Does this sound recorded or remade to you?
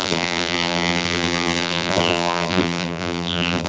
remade